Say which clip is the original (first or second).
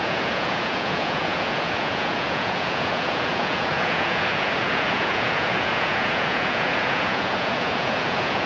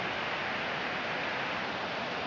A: second